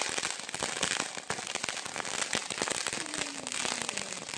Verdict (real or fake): real